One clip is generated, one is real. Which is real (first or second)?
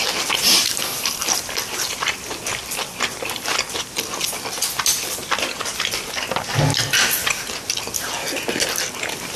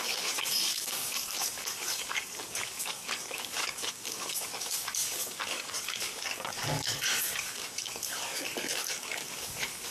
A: first